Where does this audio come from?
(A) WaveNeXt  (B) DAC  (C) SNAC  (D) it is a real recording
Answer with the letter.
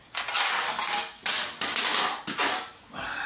D